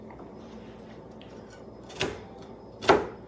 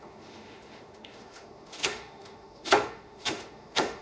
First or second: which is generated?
second